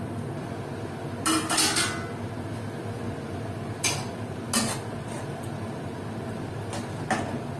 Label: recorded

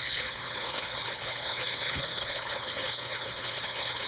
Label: remade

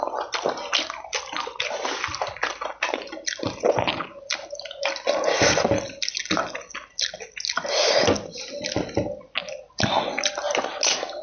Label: recorded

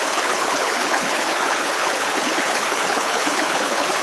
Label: remade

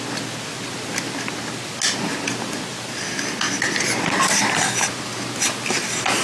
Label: recorded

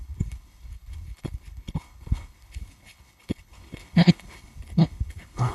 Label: remade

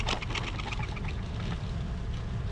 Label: recorded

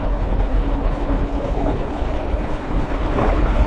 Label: remade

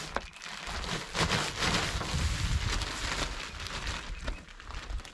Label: recorded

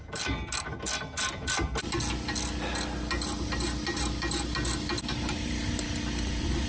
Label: recorded